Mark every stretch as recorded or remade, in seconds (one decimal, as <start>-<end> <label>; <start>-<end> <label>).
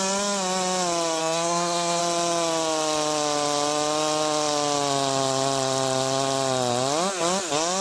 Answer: 0.0-1.2 recorded; 1.2-2.0 remade; 2.0-7.8 recorded